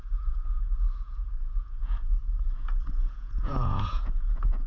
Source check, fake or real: fake